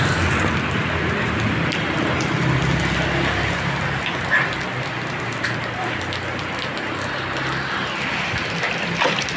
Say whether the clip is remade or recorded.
recorded